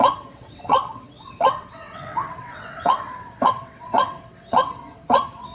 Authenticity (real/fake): fake